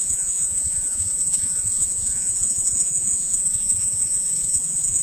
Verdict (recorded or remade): remade